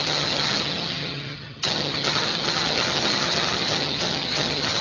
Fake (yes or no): yes